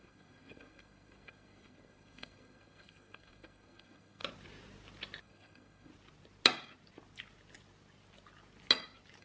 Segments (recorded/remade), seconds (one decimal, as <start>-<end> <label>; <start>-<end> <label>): 0.0-4.2 remade; 4.2-5.2 recorded; 5.2-5.9 remade; 5.9-9.2 recorded